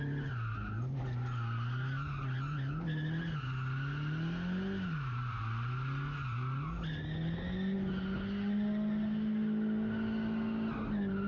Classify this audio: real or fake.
real